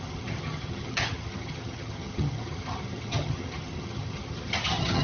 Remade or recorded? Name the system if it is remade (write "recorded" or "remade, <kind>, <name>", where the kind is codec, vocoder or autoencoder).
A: remade, vocoder, HiFi-GAN